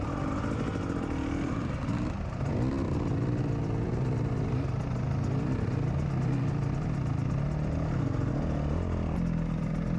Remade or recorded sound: recorded